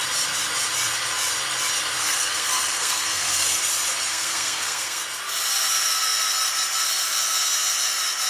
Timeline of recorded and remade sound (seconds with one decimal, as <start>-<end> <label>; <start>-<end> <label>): 0.0-2.0 recorded; 2.0-3.6 remade; 3.6-4.1 recorded; 4.1-5.0 remade; 5.0-8.3 recorded